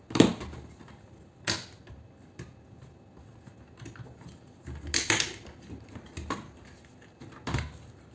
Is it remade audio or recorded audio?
recorded